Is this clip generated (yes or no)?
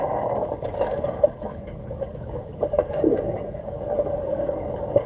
yes